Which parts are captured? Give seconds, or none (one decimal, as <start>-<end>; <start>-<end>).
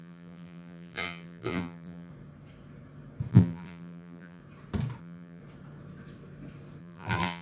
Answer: 2.1-3.3; 4.4-5.0; 5.4-6.8